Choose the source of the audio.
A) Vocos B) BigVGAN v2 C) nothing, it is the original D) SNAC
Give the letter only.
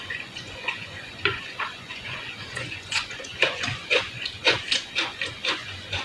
A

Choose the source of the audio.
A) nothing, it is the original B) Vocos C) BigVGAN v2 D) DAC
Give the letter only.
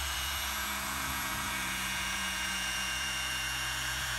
B